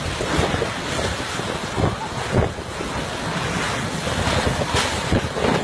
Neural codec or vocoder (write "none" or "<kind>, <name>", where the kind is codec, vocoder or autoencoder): none